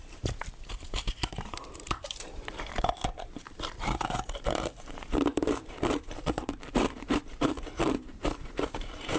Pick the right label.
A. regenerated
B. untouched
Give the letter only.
A